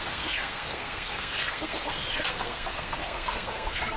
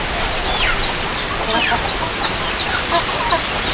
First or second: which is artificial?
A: first